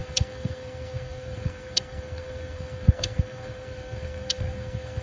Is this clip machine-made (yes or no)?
yes